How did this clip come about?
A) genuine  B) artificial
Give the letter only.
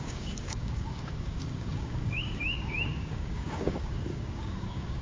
B